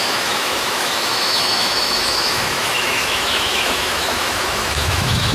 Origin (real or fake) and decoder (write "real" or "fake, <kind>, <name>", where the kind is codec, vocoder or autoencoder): fake, autoencoder, DAC-VAE